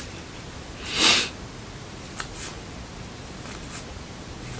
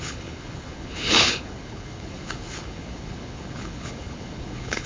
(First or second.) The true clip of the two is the first